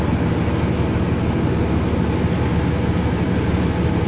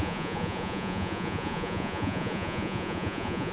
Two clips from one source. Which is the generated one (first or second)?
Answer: second